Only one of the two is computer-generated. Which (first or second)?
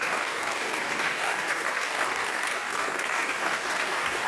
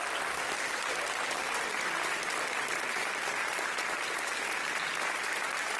first